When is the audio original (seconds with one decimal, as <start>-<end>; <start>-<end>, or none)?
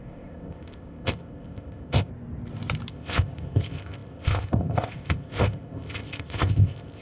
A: 2.1-2.9